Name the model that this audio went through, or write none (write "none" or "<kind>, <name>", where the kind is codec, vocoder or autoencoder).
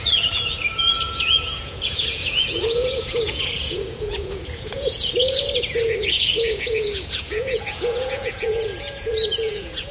vocoder, Vocos